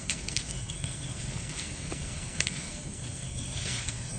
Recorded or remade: remade